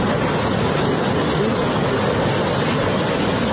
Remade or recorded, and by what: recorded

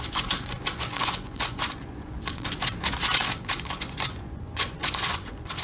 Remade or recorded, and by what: remade, vocoder, Vocos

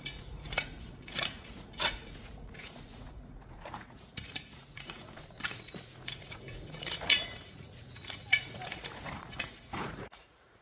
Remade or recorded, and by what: remade, vocoder, Vocos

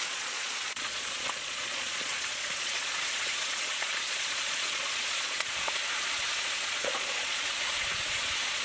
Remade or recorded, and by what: remade, vocoder, Vocos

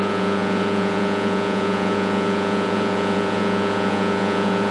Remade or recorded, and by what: remade, vocoder, Vocos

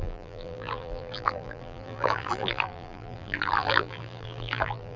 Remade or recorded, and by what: remade, vocoder, BigVGAN v2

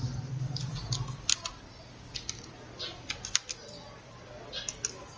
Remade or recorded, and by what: recorded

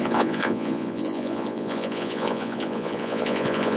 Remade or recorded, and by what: remade, vocoder, Vocos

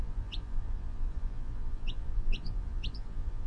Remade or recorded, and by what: remade, vocoder, Vocos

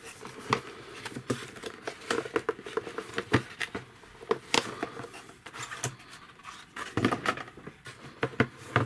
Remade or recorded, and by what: recorded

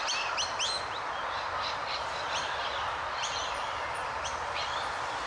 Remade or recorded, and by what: remade, vocoder, BigVGAN v2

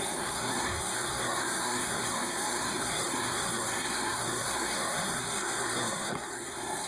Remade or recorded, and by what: remade, codec, SNAC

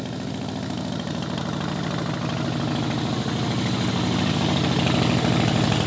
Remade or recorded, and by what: recorded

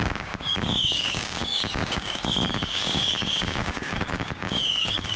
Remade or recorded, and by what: remade, codec, DAC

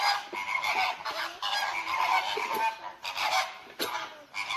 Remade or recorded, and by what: recorded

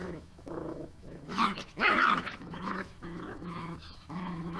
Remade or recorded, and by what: remade, autoencoder, DAC-VAE